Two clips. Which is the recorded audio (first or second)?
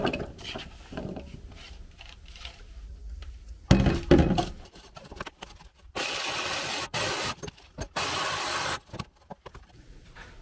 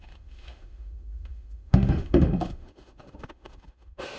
first